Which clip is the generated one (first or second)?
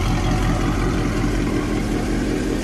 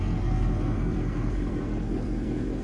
second